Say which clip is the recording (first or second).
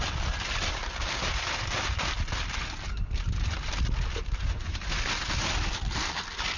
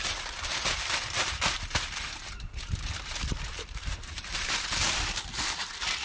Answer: first